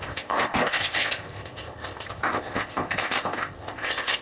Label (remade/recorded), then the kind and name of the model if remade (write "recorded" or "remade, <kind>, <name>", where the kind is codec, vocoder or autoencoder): remade, codec, ZipCodec